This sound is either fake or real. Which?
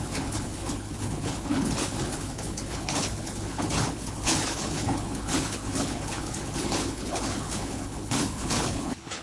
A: fake